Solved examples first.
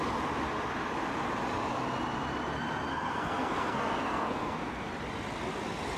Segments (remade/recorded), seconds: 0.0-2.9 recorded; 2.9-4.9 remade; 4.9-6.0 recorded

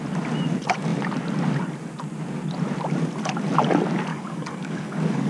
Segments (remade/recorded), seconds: 0.0-4.1 recorded; 4.1-5.3 remade

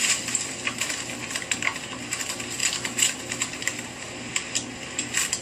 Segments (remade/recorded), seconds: 0.0-5.4 recorded

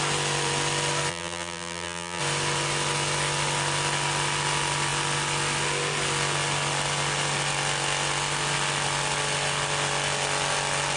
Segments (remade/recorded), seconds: 0.0-1.1 recorded; 1.1-2.2 remade; 2.2-11.0 recorded

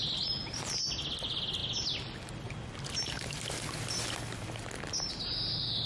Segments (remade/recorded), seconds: 0.0-5.9 recorded

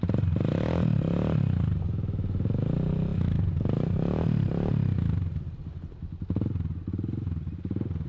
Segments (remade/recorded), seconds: 0.0-8.1 recorded